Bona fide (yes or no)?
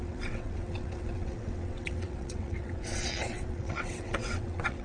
no